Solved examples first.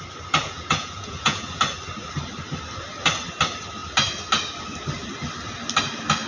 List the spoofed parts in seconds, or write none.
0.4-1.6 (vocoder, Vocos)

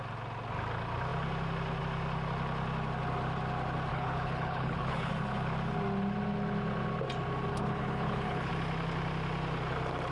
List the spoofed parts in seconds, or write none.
3.9-5.1 (codec, HILCodec); 7.5-8.5

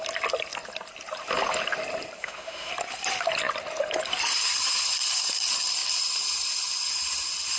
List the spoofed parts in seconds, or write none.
2.2-2.7 (autoencoder, DAC-VAE)

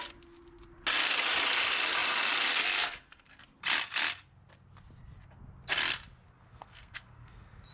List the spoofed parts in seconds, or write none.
6.5-7.7 (codec, SNAC)

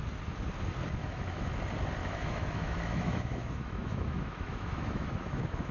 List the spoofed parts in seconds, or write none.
1.0-1.5 (autoencoder, DAC-VAE); 2.0-5.7

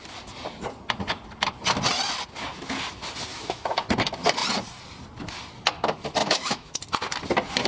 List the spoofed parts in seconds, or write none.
3.3-3.8 (autoencoder, DAC-VAE); 6.2-6.8